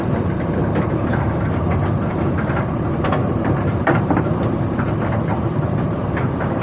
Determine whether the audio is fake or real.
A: fake